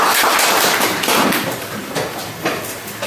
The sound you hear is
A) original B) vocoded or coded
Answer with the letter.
A